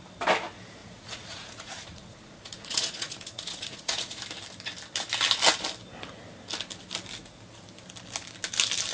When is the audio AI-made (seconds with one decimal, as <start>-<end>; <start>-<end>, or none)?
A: 0.8-4.2